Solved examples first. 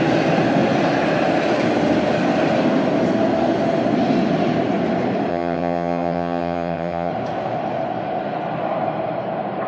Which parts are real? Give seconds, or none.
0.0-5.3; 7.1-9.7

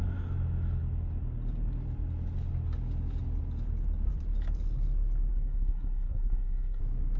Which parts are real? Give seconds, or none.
0.0-5.3; 6.8-7.2

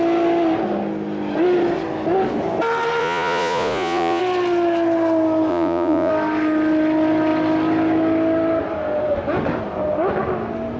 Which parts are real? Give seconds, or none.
0.0-3.0; 4.2-5.5; 6.1-10.8